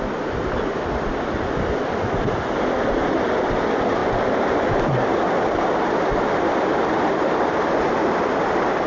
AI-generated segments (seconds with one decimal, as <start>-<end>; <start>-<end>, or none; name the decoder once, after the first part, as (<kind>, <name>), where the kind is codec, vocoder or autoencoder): none